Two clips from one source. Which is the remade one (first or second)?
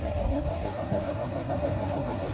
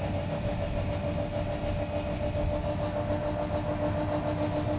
first